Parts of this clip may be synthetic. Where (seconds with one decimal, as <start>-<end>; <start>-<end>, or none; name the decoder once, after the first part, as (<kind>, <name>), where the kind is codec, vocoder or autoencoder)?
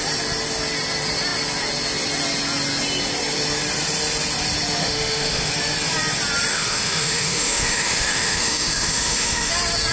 4.8-5.5 (autoencoder, DAC-VAE); 6.5-9.5